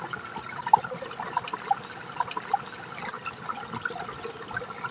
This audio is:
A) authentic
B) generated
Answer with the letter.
A